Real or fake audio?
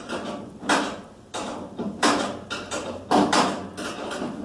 real